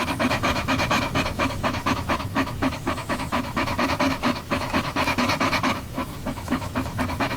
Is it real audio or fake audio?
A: fake